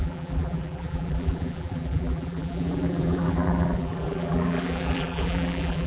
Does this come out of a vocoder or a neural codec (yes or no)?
yes